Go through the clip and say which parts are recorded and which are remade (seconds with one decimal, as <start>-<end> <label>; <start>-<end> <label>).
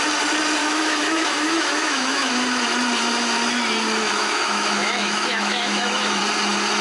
0.0-0.6 recorded; 0.6-2.3 remade; 2.3-4.0 recorded; 4.0-6.2 remade; 6.2-6.8 recorded